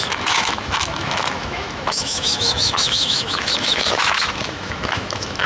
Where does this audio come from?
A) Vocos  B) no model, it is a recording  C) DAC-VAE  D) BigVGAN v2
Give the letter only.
C